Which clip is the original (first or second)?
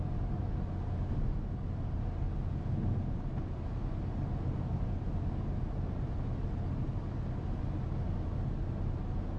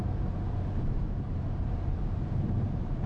first